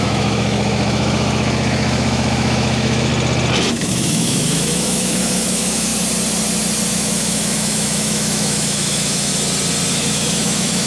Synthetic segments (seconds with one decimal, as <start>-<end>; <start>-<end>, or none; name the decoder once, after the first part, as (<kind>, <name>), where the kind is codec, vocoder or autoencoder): 0.0-3.1 (autoencoder, DAC-VAE); 3.7-5.9; 6.9-9.3; 9.9-10.9